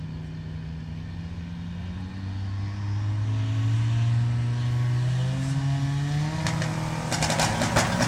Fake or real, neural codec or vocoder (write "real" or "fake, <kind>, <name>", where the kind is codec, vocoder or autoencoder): real